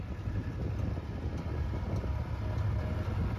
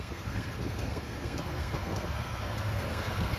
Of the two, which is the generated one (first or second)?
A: second